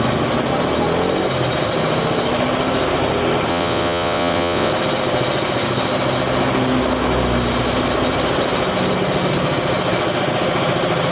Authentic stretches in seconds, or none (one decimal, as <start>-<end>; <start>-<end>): 0.0-3.5; 4.7-11.1